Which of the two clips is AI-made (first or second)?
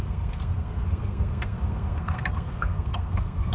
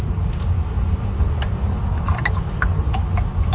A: first